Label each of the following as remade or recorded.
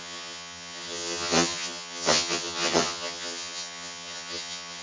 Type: remade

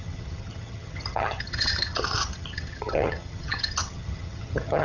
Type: remade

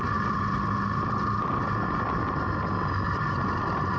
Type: recorded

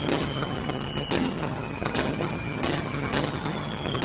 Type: remade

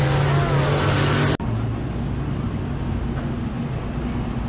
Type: recorded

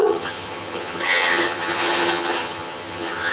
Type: remade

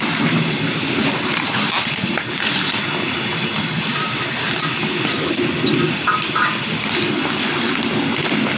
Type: recorded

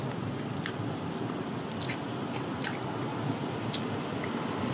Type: recorded